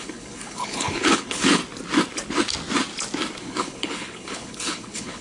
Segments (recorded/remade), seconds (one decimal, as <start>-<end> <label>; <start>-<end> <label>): 0.0-1.6 remade; 1.6-3.4 recorded; 3.4-5.2 remade